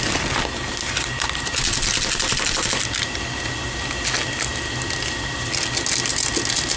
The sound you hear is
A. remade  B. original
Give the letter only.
B